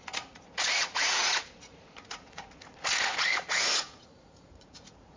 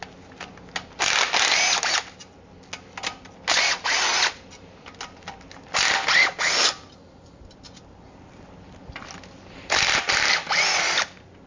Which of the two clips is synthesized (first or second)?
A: first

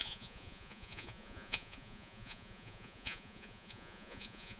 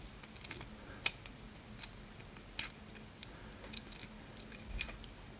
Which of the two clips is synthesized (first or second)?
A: first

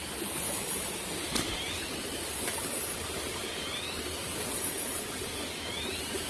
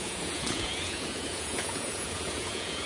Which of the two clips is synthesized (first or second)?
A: second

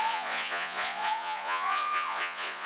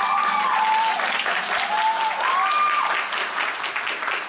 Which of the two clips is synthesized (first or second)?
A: first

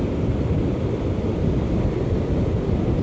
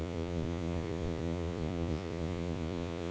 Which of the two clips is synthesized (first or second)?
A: second